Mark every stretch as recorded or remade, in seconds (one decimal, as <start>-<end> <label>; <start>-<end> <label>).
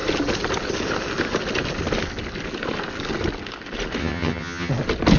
0.0-4.0 recorded; 4.0-4.7 remade; 4.7-5.2 recorded